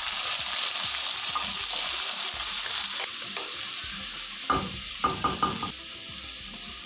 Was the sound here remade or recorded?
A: recorded